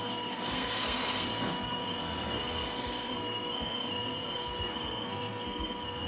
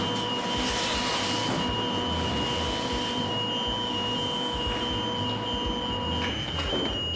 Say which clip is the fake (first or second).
first